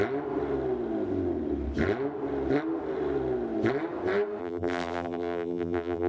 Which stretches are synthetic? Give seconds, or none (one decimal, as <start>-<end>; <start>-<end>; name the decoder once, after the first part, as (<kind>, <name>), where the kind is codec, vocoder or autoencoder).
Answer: 4.4-6.1 (vocoder, BigVGAN v2)